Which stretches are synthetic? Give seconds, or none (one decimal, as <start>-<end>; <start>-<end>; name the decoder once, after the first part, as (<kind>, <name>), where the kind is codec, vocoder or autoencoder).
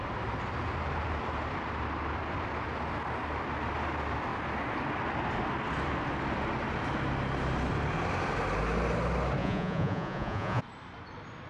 9.4-10.6 (vocoder, Vocos)